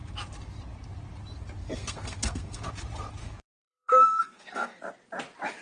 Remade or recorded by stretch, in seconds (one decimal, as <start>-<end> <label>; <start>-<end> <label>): 0.0-1.6 recorded; 1.6-2.7 remade; 2.7-3.2 recorded; 3.2-4.8 remade; 4.8-5.6 recorded